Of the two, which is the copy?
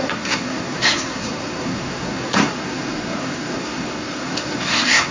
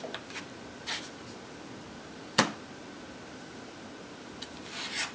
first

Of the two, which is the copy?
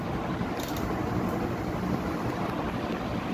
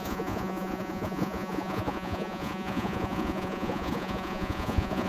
second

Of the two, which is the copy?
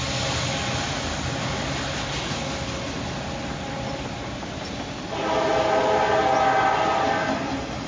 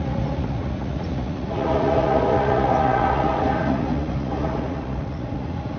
second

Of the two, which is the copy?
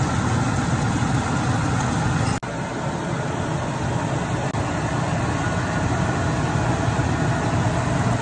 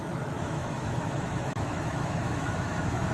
second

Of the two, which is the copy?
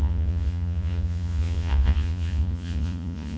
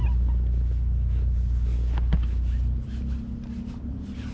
first